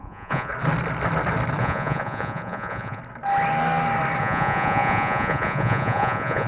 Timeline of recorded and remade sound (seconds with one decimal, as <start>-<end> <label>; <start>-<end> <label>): 0.0-0.5 remade; 0.5-1.6 recorded; 1.6-3.0 remade; 3.0-4.2 recorded; 4.2-6.5 remade